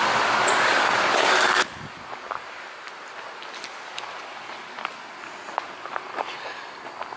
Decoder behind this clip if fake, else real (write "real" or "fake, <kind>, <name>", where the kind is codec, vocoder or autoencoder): real